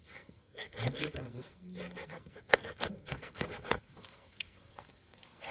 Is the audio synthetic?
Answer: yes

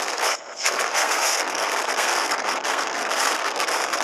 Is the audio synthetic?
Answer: yes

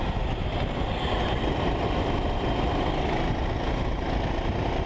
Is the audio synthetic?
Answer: no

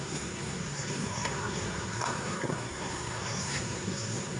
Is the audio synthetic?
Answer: yes